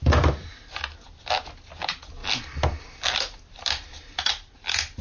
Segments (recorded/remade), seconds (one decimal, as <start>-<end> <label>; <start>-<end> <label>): 0.0-5.0 recorded